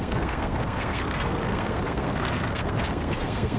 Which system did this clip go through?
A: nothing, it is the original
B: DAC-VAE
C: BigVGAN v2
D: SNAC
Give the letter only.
D